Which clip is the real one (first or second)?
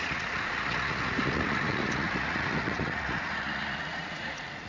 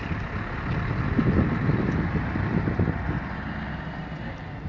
second